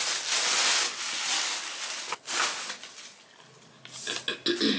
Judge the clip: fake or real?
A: real